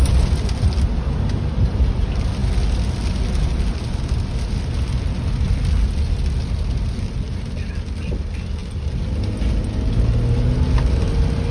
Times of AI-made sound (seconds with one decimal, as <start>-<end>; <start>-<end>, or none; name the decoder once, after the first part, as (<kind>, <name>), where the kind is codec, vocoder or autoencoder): none